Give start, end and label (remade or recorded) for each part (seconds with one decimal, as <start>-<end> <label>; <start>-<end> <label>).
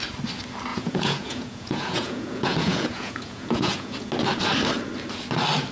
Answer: 0.0-0.7 recorded; 0.7-4.1 remade; 4.1-5.7 recorded